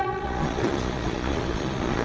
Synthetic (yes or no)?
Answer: yes